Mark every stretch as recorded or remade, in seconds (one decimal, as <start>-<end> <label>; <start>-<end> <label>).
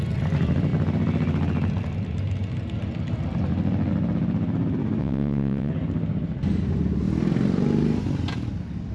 0.0-5.0 recorded; 5.0-5.7 remade; 5.7-8.9 recorded